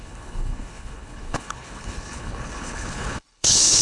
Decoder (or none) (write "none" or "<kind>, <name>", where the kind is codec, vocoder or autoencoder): codec, HILCodec